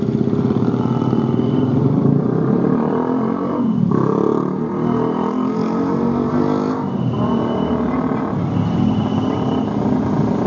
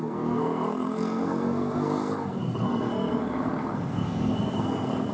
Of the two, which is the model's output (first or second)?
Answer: second